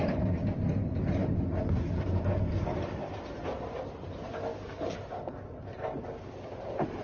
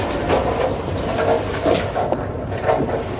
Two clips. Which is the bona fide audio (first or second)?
first